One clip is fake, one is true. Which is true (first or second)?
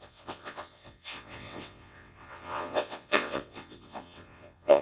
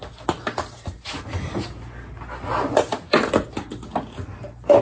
second